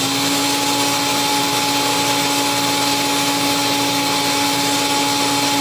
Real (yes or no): yes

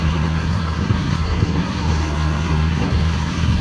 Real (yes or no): no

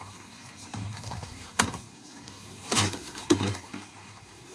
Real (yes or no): no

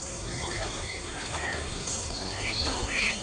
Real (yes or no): no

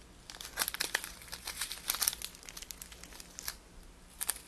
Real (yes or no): yes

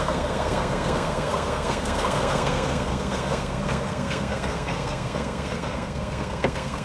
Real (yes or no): no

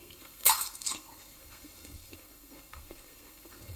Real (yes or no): no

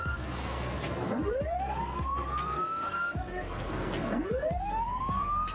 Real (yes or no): no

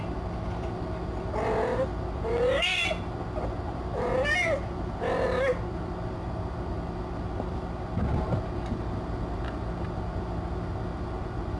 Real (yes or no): yes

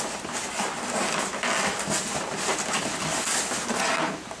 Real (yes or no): yes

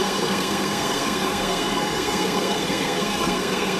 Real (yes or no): no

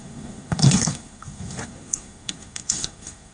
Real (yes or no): no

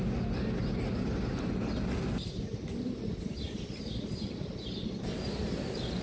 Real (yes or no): yes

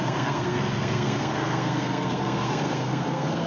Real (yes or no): no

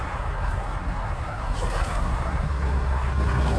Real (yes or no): no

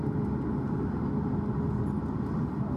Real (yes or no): yes